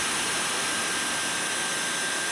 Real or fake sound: real